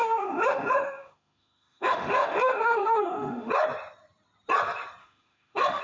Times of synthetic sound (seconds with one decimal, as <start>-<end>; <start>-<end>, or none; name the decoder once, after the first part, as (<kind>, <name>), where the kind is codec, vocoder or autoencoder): 0.0-3.5 (autoencoder, DAC-VAE); 5.0-5.8